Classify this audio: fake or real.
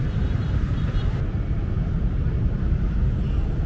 real